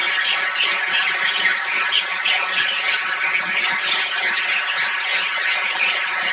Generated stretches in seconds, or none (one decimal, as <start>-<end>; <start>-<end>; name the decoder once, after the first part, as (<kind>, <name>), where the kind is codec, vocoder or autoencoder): 0.0-3.8 (vocoder, Vocos); 5.1-6.3